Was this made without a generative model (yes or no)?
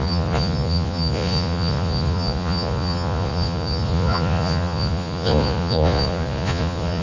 no